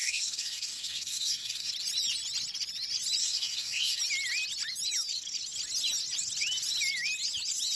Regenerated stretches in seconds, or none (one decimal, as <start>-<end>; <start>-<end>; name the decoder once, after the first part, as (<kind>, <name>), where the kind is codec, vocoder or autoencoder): 0.0-1.7 (codec, SNAC); 3.2-4.0